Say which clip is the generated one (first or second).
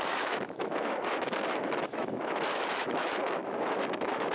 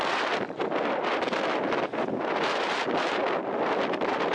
first